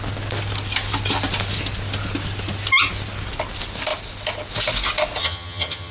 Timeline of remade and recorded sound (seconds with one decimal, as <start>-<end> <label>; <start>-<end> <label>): 0.0-5.2 recorded; 5.2-5.9 remade

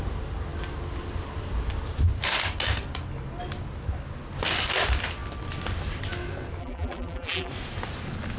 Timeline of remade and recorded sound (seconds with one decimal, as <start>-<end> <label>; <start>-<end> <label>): 0.0-6.6 recorded; 6.6-7.5 remade; 7.5-8.4 recorded

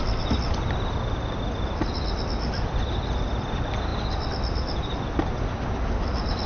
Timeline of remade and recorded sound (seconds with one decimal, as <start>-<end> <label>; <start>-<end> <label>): 0.0-6.5 recorded